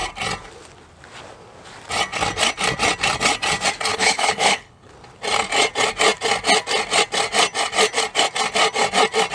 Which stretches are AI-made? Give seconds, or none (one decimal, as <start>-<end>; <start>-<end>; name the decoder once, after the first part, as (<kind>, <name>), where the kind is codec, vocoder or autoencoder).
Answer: 3.9-4.9 (codec, HILCodec)